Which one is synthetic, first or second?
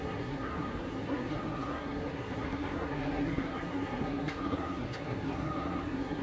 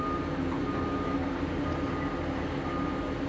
first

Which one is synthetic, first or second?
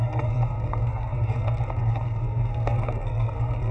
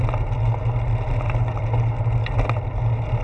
first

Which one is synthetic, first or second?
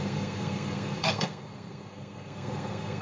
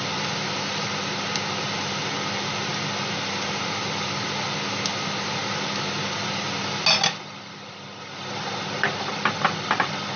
first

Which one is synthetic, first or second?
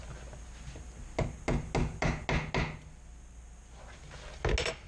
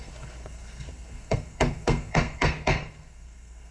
second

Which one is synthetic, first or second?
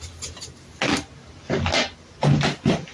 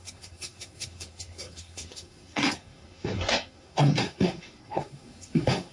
second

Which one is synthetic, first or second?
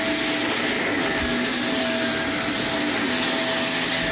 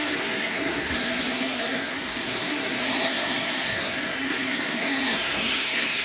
second